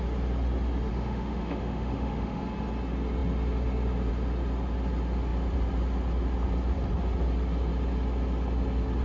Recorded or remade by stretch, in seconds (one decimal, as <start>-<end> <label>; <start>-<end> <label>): 0.0-0.9 recorded; 0.9-2.4 remade; 2.4-9.0 recorded